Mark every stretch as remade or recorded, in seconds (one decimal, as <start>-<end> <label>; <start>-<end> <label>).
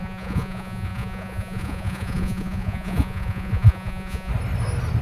0.0-4.3 remade; 4.3-5.0 recorded